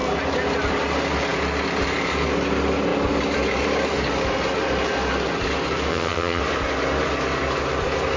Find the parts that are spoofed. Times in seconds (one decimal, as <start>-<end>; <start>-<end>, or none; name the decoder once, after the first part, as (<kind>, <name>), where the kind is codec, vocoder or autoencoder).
5.9-6.4 (vocoder, HiFi-GAN)